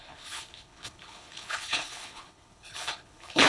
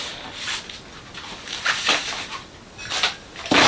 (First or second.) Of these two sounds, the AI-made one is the first